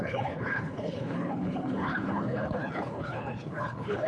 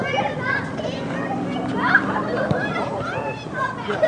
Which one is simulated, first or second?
first